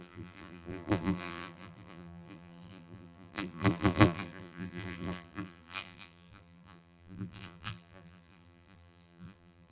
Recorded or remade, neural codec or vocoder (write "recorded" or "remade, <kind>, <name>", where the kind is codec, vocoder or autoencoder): remade, vocoder, BigVGAN v2